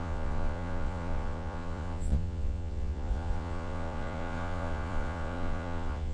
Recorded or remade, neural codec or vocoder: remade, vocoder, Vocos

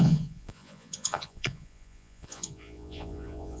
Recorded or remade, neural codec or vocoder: remade, vocoder, Vocos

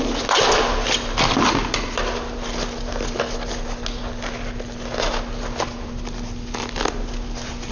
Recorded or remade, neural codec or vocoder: recorded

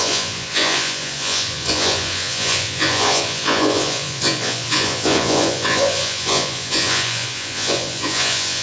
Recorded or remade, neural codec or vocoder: remade, vocoder, Vocos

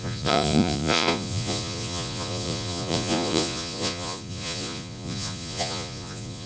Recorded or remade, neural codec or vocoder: remade, vocoder, Vocos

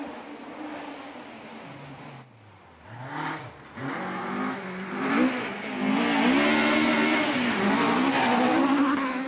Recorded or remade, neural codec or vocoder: recorded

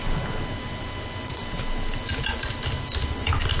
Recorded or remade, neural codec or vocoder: recorded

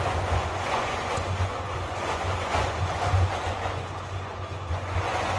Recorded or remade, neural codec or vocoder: remade, vocoder, Vocos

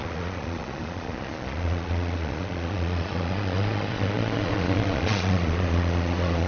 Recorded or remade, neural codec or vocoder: remade, vocoder, Vocos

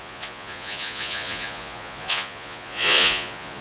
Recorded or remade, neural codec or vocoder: remade, vocoder, Vocos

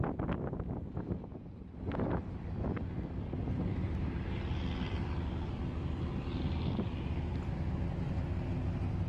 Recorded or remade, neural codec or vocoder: recorded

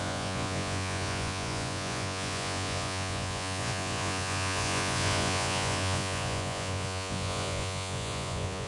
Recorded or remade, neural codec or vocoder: remade, vocoder, Vocos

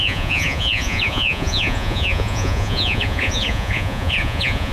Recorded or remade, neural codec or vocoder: remade, vocoder, Vocos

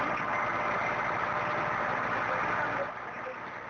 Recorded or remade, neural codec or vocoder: recorded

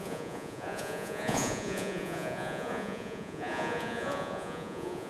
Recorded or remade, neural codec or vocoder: remade, vocoder, Vocos